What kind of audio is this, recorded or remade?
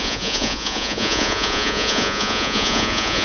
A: remade